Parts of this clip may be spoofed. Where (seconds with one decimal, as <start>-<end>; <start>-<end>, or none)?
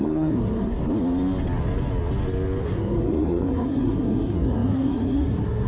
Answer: 0.0-0.8; 2.6-5.7